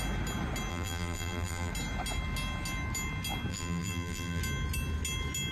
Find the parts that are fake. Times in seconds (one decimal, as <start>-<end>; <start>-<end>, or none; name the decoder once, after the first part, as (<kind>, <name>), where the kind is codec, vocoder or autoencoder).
0.7-1.7 (vocoder, BigVGAN v2); 3.5-4.4